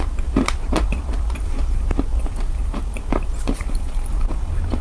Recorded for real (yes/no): no